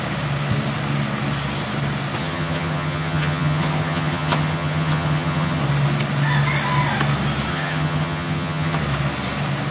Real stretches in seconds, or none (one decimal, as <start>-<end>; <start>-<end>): 0.0-2.2; 5.6-7.5; 8.8-9.7